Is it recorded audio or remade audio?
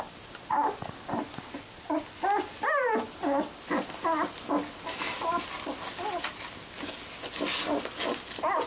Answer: recorded